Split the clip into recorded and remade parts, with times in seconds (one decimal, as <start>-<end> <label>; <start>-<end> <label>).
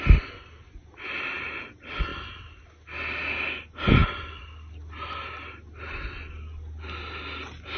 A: 0.0-7.8 recorded